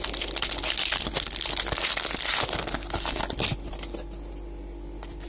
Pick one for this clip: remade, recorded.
recorded